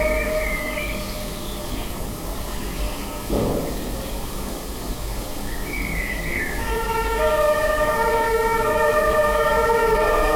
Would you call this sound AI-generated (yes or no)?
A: yes